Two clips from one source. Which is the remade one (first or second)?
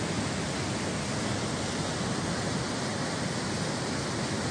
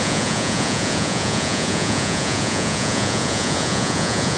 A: second